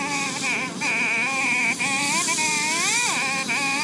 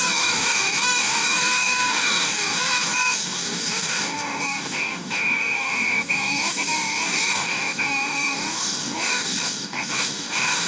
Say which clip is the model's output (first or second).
second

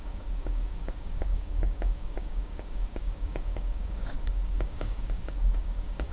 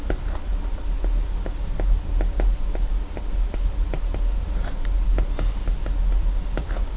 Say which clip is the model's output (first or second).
first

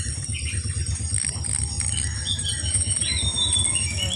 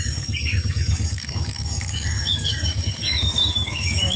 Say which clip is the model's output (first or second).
second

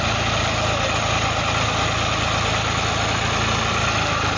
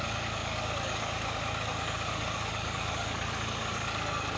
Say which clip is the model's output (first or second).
second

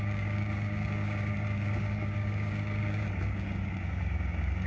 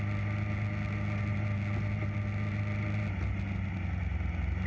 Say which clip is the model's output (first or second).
first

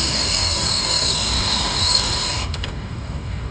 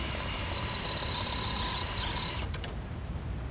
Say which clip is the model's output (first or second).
first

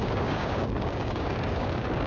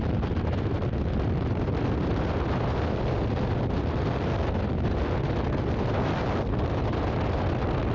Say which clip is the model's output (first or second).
first